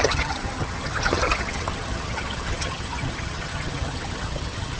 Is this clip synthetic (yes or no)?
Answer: yes